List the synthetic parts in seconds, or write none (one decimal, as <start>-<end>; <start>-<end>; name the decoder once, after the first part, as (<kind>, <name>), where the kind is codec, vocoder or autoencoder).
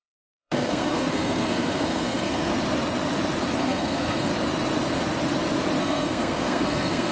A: 0.0-2.5 (codec, SNAC); 3.6-4.3; 5.8-7.1